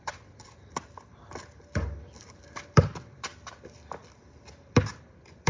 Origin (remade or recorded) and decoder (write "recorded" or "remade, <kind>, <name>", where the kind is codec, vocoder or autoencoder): recorded